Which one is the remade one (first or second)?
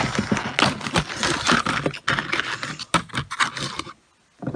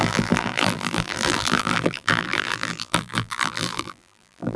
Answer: second